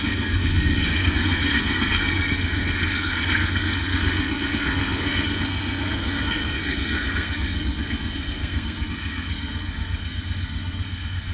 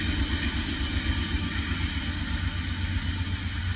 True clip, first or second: second